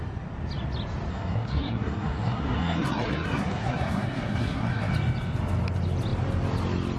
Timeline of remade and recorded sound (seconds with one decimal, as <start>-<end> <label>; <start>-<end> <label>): 0.0-1.1 recorded; 1.1-4.9 remade; 4.9-7.0 recorded